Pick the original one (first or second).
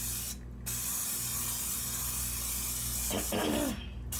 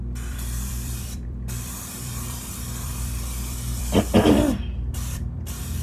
first